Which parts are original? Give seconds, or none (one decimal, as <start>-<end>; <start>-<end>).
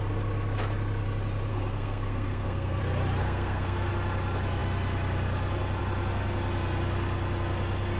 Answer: 0.0-1.5; 2.8-3.2; 3.9-8.0